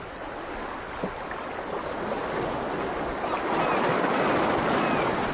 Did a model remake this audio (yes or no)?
no